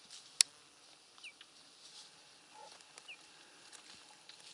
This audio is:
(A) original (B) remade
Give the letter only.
A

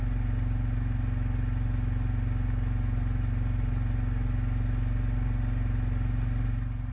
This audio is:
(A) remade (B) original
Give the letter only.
B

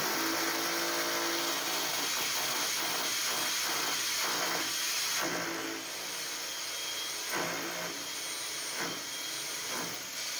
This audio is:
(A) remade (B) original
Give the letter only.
B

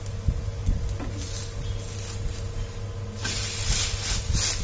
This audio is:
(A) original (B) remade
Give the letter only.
A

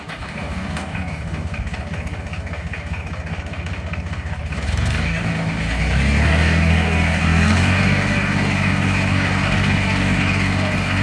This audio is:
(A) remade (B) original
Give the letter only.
A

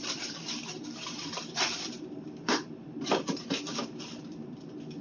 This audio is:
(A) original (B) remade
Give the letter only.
B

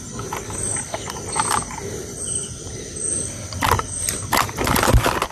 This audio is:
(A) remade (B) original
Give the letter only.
B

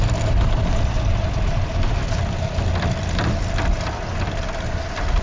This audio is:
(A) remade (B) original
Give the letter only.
B